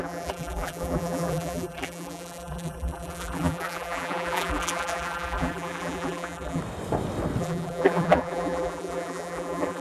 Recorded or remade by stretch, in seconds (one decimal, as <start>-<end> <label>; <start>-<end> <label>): 0.0-6.6 remade; 6.6-7.4 recorded; 7.4-9.8 remade